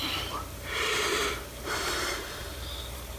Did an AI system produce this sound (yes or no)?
yes